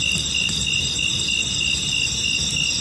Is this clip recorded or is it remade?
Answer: recorded